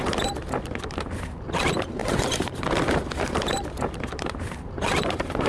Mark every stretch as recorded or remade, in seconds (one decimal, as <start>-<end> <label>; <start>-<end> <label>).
0.0-2.0 recorded; 2.0-5.5 remade